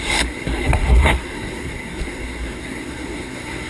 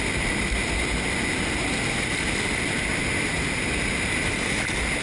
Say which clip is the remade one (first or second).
first